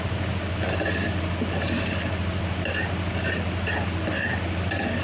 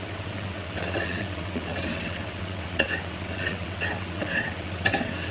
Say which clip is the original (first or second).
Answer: first